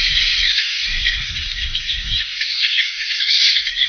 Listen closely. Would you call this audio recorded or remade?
remade